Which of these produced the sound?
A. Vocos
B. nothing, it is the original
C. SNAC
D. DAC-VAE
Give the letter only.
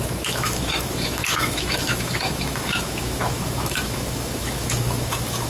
D